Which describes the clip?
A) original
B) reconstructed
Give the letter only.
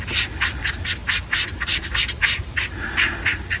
A